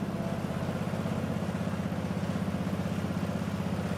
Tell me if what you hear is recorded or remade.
recorded